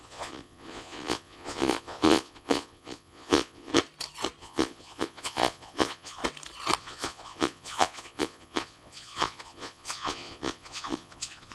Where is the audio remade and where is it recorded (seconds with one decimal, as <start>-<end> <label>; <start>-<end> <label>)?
0.0-3.7 remade; 3.7-4.4 recorded; 4.4-6.2 remade; 6.2-6.8 recorded; 6.8-11.5 remade